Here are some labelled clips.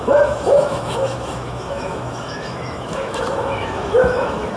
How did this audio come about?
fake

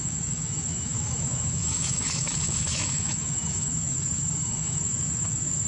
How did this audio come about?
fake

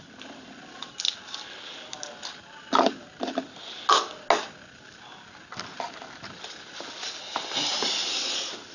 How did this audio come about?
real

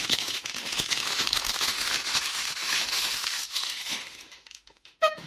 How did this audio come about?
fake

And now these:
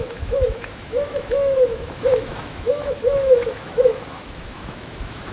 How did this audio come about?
fake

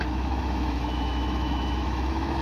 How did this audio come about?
fake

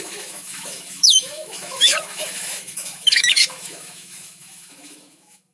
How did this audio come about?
fake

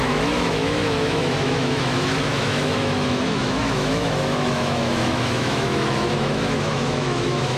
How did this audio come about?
fake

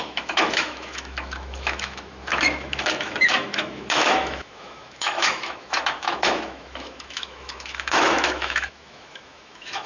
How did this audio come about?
fake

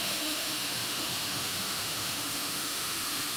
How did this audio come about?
fake